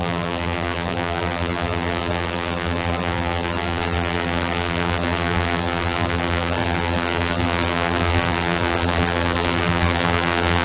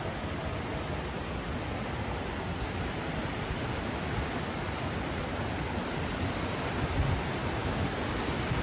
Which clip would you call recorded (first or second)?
second